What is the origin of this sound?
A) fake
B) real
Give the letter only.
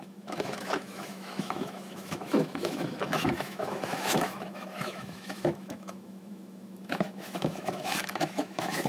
A